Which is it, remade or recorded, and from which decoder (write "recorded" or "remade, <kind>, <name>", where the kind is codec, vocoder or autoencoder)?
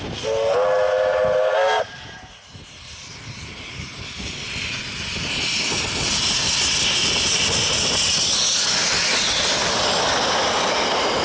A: recorded